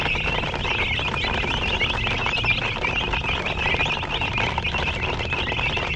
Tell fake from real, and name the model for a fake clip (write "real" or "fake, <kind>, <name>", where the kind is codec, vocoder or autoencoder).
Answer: real